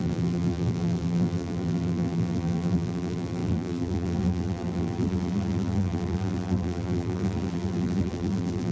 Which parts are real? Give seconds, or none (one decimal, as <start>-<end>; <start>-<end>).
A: none